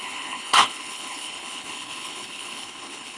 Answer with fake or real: fake